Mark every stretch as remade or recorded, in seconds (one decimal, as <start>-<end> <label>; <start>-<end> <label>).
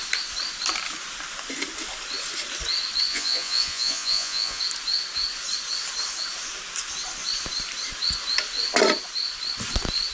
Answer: 0.0-3.1 recorded; 3.1-4.6 remade; 4.6-10.1 recorded